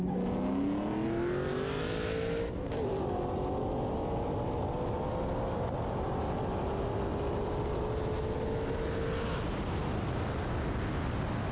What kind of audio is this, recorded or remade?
recorded